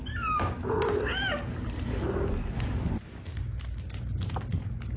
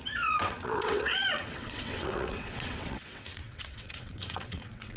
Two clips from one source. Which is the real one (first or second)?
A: first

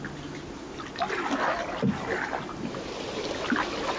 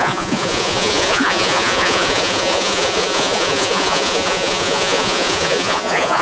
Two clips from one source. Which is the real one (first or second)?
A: first